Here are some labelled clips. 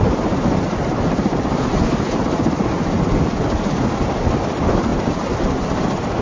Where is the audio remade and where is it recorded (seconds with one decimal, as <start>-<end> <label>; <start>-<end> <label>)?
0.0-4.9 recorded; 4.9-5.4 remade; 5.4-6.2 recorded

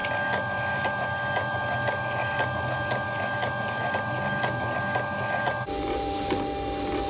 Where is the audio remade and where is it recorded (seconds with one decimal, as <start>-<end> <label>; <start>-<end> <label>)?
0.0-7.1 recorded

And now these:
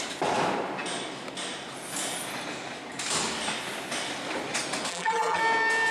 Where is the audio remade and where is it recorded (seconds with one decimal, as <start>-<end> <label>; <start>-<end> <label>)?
0.0-4.9 recorded; 4.9-5.4 remade; 5.4-5.9 recorded